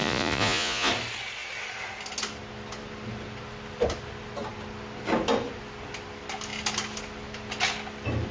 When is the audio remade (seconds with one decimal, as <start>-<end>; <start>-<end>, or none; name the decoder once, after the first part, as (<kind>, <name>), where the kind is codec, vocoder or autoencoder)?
0.0-0.9 (vocoder, Vocos)